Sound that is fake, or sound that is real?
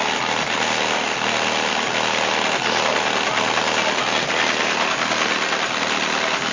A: real